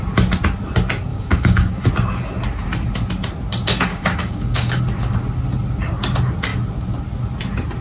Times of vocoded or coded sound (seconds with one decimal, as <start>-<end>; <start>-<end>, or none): 1.1-1.9; 3.9-4.8